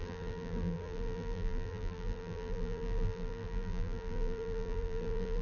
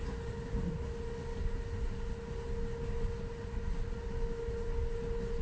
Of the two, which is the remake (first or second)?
first